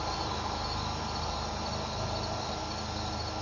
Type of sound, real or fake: real